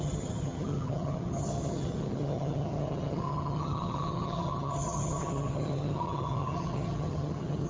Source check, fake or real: fake